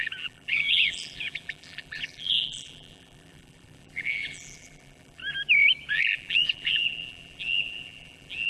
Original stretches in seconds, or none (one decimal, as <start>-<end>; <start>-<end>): 5.2-5.9